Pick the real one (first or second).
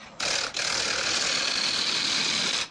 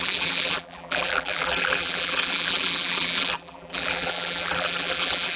first